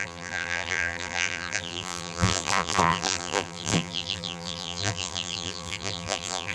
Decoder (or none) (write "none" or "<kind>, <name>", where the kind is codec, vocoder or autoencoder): vocoder, BigVGAN v2